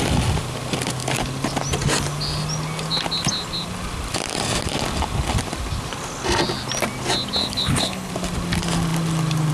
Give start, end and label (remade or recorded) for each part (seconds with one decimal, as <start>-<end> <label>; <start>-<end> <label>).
0.0-7.4 recorded; 7.4-8.1 remade; 8.1-9.5 recorded